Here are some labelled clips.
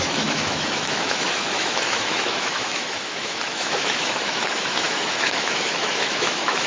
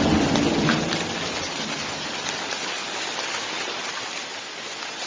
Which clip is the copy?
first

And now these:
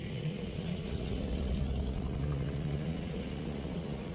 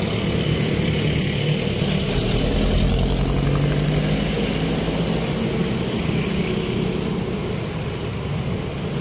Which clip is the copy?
first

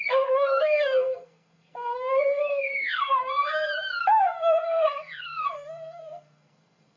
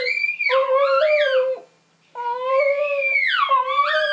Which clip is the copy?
first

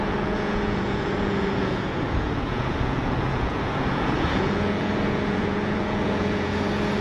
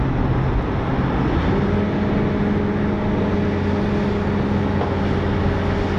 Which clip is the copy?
first